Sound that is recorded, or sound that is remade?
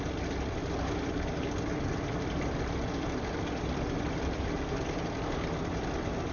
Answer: recorded